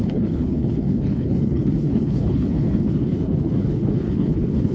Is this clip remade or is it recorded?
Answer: remade